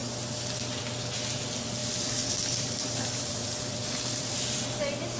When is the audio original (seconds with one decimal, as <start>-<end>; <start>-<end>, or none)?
0.0-1.8; 4.6-5.2